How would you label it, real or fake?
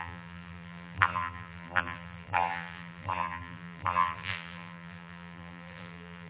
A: fake